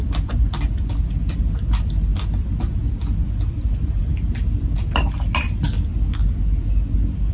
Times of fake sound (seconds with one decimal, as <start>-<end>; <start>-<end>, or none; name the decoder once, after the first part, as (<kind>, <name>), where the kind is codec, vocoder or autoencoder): none